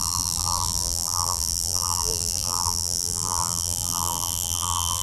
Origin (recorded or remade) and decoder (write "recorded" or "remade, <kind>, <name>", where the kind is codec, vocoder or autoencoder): remade, vocoder, BigVGAN v2